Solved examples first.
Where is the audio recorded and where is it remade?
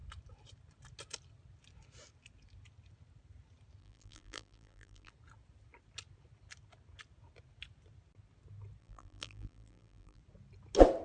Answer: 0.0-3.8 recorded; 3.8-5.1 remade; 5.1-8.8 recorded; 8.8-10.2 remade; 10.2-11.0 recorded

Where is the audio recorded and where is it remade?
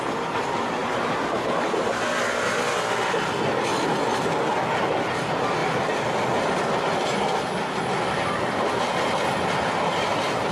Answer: 0.0-0.8 recorded; 0.8-2.9 remade; 2.9-10.5 recorded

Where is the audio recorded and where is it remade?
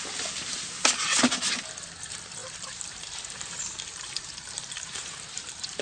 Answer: 0.0-2.4 recorded; 2.4-5.8 remade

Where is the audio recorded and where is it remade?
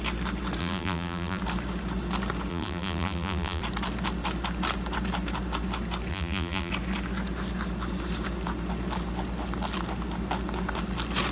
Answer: 0.0-0.6 recorded; 0.6-1.4 remade; 1.4-2.5 recorded; 2.5-3.6 remade; 3.6-6.1 recorded; 6.1-6.7 remade; 6.7-11.3 recorded